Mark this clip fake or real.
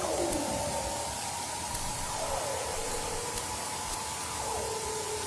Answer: real